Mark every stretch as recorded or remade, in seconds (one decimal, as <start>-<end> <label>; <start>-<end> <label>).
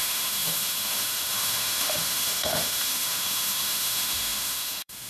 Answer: 0.0-5.1 remade